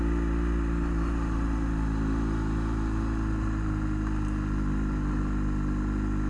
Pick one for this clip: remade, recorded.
recorded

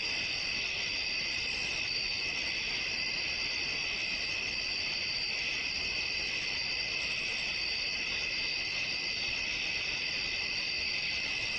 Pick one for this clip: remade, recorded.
recorded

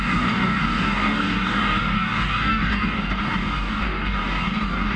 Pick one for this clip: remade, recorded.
remade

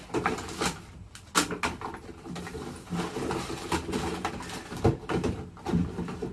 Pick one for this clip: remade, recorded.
recorded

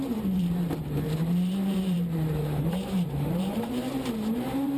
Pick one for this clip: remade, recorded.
remade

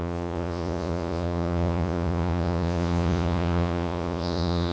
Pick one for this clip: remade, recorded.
remade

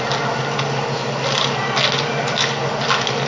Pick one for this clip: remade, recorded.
recorded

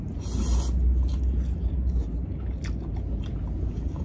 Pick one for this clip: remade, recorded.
recorded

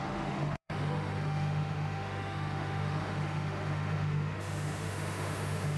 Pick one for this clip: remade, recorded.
remade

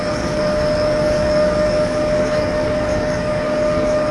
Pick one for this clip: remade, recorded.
remade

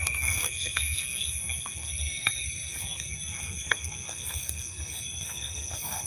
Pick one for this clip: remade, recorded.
remade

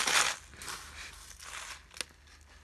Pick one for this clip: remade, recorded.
recorded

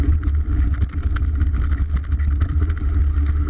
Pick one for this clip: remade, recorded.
recorded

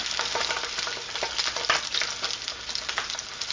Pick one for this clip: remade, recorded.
recorded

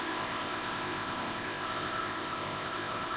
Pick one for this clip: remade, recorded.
remade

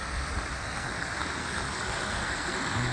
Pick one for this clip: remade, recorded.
remade